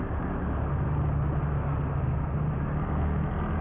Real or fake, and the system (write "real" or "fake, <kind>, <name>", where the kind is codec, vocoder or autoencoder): real